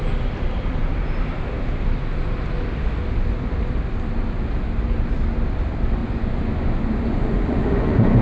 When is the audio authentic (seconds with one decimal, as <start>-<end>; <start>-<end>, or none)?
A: 0.0-6.0

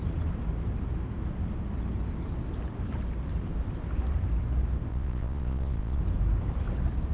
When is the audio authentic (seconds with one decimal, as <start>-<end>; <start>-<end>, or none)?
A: 0.0-4.9; 6.0-7.1

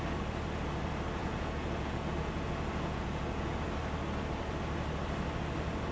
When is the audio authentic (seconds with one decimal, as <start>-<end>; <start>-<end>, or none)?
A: 0.0-1.2; 3.6-5.9

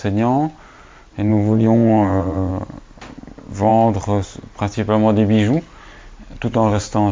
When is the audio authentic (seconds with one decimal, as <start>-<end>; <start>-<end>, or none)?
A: 0.0-1.3; 2.5-7.1

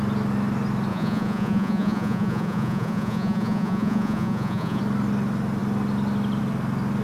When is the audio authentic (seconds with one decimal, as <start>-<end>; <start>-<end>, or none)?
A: 0.0-0.9; 4.8-7.0

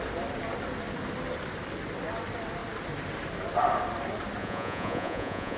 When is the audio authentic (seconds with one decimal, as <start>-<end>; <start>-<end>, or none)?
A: 0.0-4.4